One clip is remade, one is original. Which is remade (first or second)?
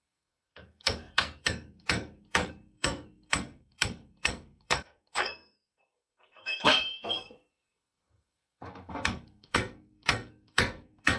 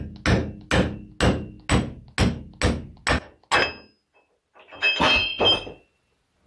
first